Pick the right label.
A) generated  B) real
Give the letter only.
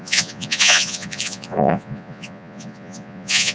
A